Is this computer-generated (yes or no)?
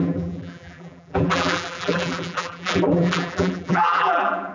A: yes